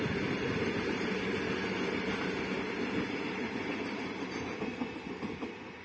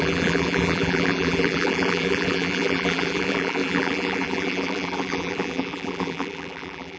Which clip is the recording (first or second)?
first